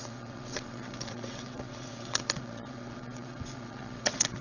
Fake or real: fake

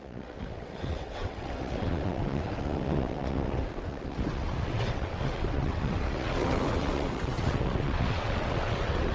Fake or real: fake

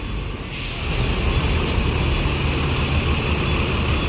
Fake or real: real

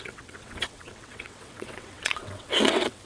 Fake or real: fake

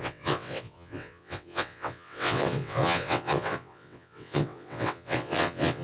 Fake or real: fake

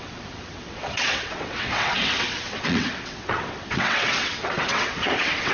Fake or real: fake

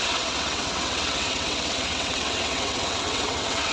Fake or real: fake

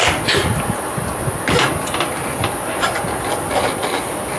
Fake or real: real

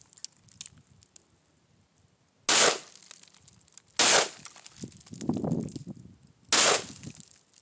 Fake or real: real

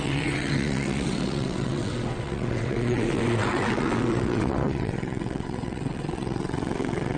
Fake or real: fake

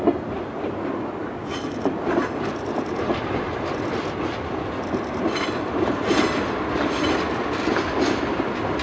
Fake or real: real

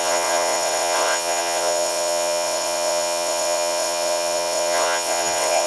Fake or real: fake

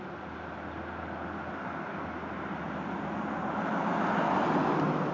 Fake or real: real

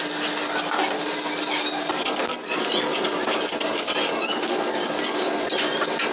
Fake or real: real